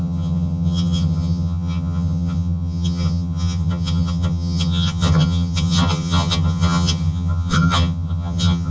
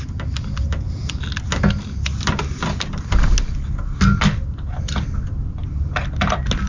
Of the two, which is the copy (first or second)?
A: first